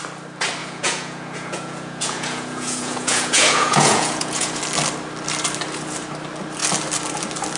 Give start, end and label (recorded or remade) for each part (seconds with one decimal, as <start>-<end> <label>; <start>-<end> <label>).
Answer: 0.0-0.6 recorded; 0.6-4.6 remade; 4.6-7.6 recorded